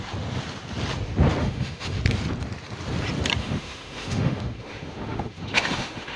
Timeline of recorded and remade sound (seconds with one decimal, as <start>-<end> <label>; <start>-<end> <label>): 0.0-1.4 recorded; 1.4-2.0 remade; 2.0-3.4 recorded; 3.4-6.2 remade